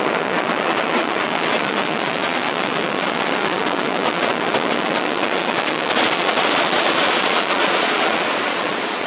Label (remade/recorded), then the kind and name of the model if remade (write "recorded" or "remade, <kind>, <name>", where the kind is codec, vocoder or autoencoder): remade, vocoder, Vocos